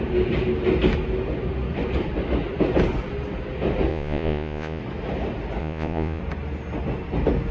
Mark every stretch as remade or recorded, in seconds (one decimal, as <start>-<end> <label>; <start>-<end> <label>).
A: 0.0-3.9 recorded; 3.9-4.8 remade; 4.8-5.6 recorded; 5.6-6.2 remade; 6.2-7.5 recorded